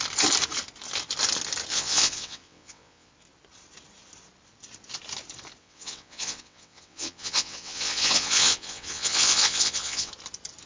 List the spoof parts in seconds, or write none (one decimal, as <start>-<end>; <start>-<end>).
1.7-3.1; 5.6-10.1